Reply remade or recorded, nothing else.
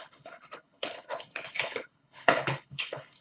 remade